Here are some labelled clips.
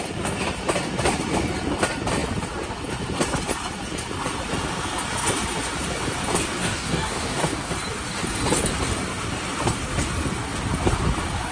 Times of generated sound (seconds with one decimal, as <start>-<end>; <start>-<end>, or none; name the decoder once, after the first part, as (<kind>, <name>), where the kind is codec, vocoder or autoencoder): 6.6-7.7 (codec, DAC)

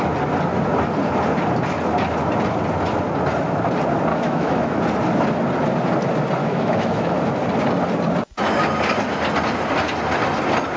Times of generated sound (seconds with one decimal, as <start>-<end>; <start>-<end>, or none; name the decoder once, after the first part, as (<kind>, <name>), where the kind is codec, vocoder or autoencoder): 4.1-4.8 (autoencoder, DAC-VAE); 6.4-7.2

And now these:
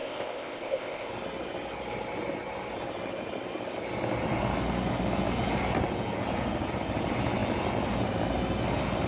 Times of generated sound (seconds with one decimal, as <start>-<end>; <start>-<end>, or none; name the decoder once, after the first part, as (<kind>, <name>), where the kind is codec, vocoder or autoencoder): 0.0-1.1 (codec, ZipCodec)

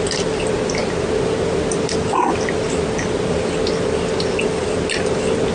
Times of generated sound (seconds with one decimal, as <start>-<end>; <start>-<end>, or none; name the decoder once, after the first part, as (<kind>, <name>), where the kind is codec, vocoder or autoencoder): none

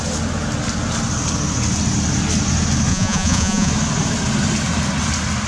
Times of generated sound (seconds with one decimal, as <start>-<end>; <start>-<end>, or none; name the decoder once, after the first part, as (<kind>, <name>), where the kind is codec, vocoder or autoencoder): 2.9-3.7 (vocoder, Vocos)

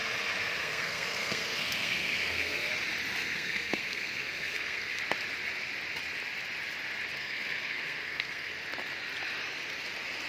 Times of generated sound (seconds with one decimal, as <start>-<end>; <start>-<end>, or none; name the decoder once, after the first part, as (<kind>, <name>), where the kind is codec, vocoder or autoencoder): 0.4-2.7 (codec, SNAC); 3.2-5.0; 7.1-8.5